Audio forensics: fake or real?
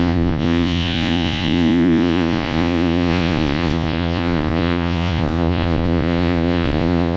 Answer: fake